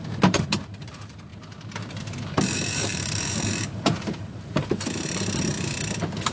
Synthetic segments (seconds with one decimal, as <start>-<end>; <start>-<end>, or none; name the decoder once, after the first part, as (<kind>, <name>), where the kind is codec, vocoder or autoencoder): 0.0-5.5 (vocoder, BigVGAN v2)